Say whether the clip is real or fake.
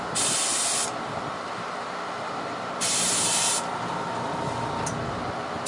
real